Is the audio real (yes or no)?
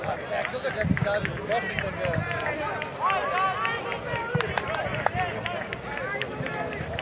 yes